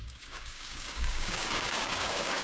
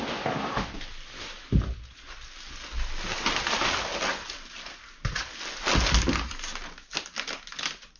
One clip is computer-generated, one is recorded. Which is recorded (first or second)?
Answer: second